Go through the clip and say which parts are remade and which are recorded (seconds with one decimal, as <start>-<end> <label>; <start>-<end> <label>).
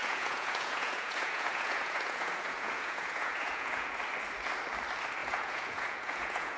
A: 0.0-4.0 remade; 4.0-5.2 recorded; 5.2-6.6 remade